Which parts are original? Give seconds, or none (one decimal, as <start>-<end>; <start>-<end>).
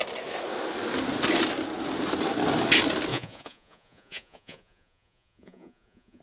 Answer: 0.0-3.1